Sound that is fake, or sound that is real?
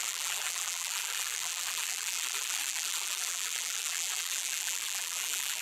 fake